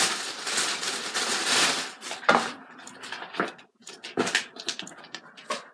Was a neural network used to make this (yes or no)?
no